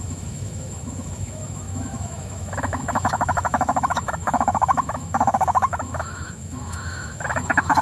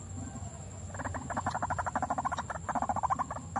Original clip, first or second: second